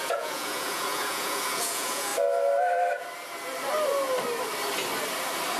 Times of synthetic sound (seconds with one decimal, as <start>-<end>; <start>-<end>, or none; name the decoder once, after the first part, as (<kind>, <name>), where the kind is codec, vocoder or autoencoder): 0.0-2.1 (vocoder, Vocos)